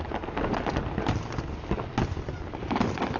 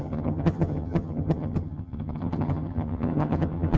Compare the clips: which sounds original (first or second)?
first